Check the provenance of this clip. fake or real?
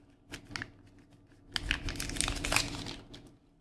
real